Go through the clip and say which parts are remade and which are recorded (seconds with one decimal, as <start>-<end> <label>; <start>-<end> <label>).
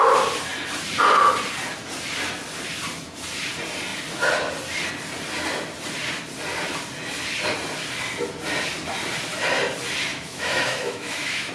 0.0-10.1 recorded; 10.1-11.5 remade